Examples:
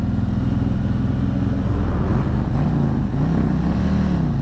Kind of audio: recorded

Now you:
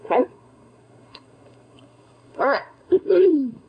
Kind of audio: remade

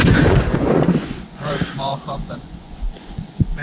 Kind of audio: remade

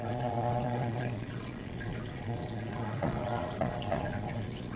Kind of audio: remade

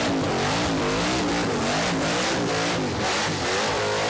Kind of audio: recorded